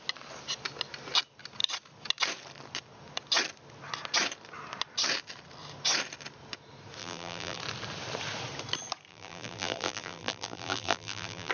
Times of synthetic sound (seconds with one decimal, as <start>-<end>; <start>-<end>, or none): 7.0-7.6; 9.1-11.5